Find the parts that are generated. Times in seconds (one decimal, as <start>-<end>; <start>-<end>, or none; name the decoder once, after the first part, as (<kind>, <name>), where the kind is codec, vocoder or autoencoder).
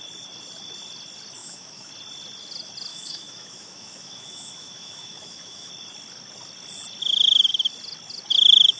1.4-1.9 (autoencoder, DAC-VAE); 2.9-5.7